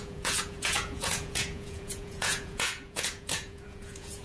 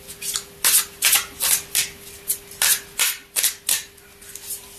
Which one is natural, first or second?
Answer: second